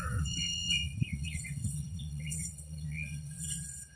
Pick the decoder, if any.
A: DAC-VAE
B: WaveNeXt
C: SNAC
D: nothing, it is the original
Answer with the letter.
B